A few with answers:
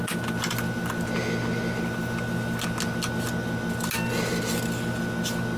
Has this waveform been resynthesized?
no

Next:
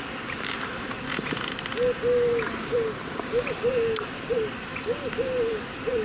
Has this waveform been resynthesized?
yes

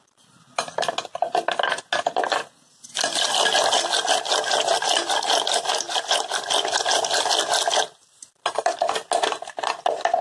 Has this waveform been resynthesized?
no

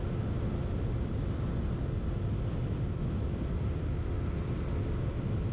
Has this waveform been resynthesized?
no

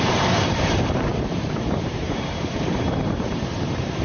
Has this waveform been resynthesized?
yes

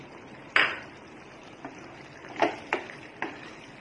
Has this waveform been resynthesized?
yes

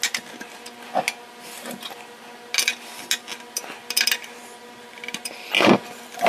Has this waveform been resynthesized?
no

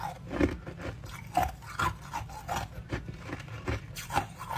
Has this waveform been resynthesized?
no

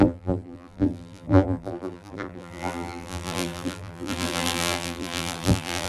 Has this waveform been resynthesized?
yes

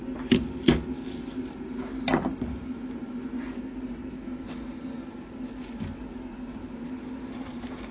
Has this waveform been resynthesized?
no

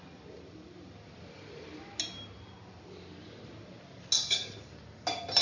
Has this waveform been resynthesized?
no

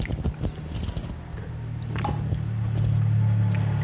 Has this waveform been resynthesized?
no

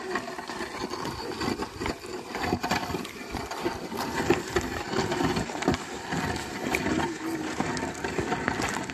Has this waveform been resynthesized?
no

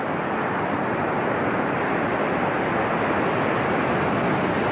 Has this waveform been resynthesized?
no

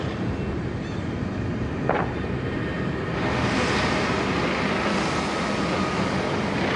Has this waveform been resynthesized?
no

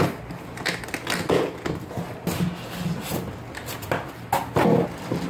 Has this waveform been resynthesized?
no